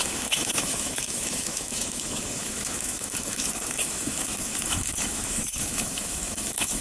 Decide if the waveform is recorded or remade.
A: remade